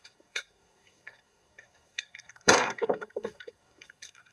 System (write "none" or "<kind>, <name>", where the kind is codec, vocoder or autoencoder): codec, SNAC